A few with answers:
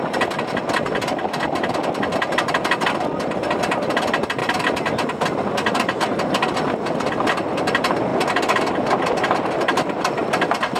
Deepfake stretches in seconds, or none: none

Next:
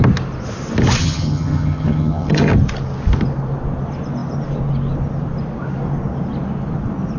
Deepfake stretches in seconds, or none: 1.0-2.5 (vocoder, HiFi-GAN)

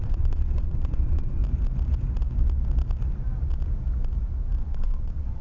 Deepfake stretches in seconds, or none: 0.0-1.4 (vocoder, WaveNeXt); 4.6-5.4

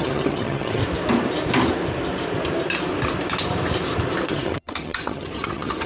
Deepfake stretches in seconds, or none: 0.0-0.8 (vocoder, HiFi-GAN); 4.3-5.9

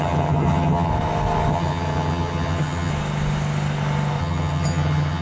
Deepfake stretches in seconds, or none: 0.0-0.9 (vocoder, HiFi-GAN); 1.5-2.9; 4.2-5.2

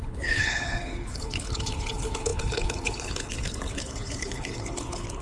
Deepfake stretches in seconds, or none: 0.0-5.2 (codec, HILCodec)

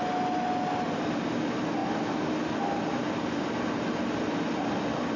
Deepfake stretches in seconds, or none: none